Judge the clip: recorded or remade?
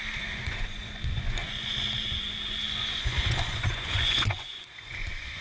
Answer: remade